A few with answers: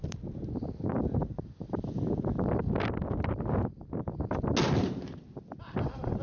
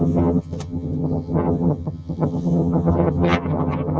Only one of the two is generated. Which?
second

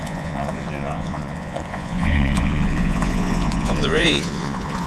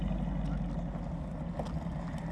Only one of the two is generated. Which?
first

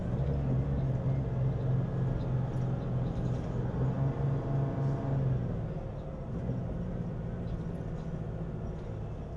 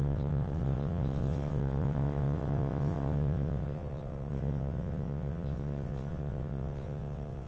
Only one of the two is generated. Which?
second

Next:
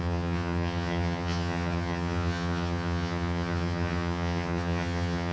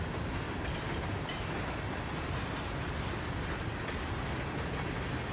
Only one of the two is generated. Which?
first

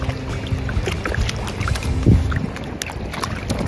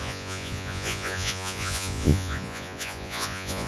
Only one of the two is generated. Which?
second